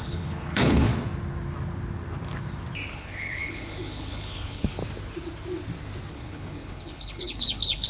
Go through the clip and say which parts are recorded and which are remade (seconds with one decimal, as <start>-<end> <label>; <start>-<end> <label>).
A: 0.0-0.9 remade; 0.9-2.9 recorded; 2.9-4.8 remade; 4.8-6.1 recorded; 6.1-7.9 remade